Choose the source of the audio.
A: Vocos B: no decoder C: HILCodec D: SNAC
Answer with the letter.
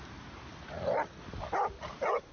B